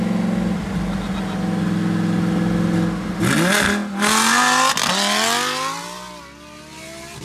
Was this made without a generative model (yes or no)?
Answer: yes